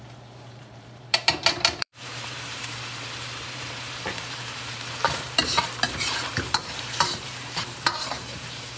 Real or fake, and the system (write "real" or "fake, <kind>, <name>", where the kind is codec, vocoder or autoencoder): fake, vocoder, BigVGAN v2